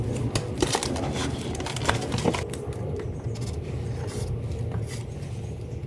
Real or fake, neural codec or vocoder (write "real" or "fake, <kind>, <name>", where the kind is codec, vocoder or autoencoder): real